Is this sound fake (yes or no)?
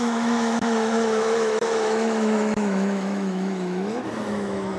yes